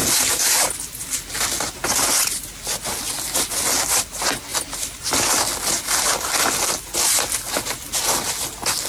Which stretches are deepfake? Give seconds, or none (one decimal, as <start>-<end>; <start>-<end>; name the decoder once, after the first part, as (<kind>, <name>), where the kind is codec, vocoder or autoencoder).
4.5-6.6 (vocoder, BigVGAN v2)